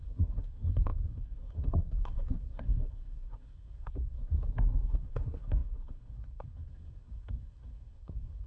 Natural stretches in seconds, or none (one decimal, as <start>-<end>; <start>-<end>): none